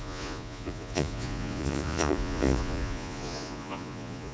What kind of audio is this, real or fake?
fake